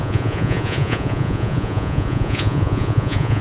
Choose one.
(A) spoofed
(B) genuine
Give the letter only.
A